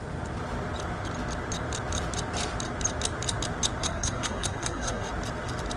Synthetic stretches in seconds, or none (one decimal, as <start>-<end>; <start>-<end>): 3.8-5.1